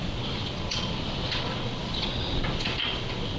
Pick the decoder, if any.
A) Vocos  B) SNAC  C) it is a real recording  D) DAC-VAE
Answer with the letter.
A